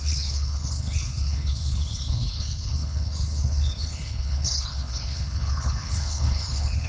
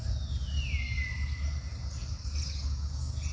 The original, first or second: second